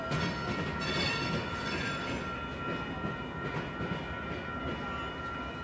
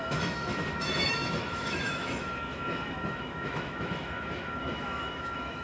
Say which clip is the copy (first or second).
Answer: second